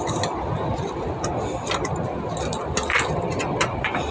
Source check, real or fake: real